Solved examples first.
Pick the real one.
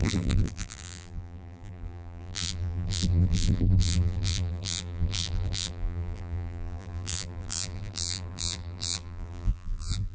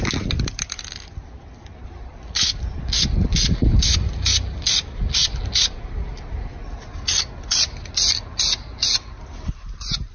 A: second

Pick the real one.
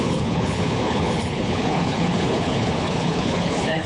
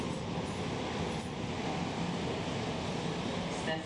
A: second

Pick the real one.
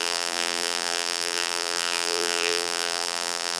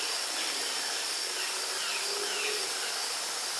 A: second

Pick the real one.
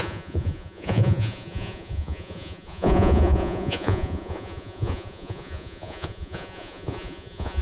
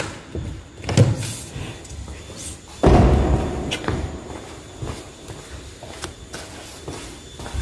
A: second